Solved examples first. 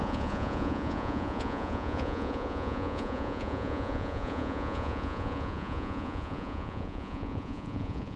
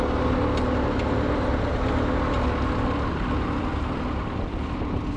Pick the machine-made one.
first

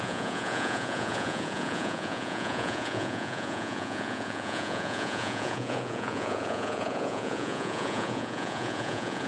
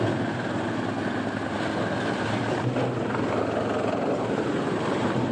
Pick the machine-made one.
first